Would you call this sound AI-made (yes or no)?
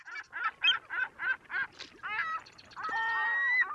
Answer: no